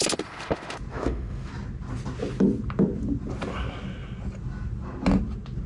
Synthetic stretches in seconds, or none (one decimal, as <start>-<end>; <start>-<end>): 0.9-1.5